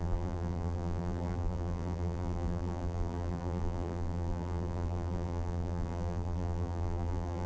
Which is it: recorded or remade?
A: remade